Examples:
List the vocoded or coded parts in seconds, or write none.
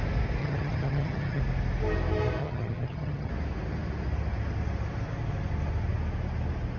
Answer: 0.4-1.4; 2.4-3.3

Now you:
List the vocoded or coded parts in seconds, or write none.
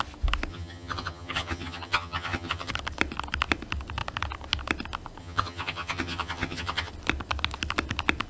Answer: 0.5-2.7; 5.2-6.9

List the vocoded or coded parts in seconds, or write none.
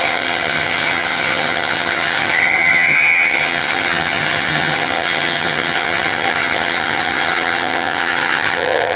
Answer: 0.0-9.0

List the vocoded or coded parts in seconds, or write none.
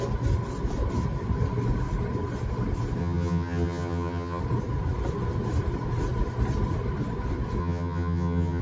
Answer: 3.0-4.4; 7.6-8.6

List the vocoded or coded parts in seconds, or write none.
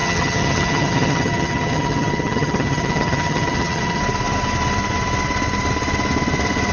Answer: 0.0-4.0